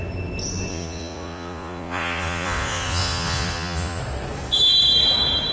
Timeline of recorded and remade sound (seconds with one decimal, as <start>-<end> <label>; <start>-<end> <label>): 0.0-0.7 recorded; 0.7-4.0 remade; 4.0-5.5 recorded